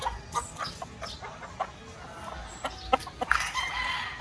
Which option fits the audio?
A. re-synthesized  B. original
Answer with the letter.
B